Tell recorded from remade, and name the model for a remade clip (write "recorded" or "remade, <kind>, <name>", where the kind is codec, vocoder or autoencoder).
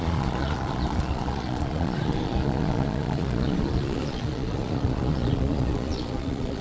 remade, vocoder, Vocos